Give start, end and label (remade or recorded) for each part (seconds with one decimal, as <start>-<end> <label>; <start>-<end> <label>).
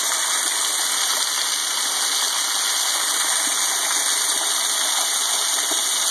0.0-6.1 recorded